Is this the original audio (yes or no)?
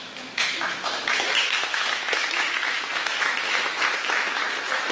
no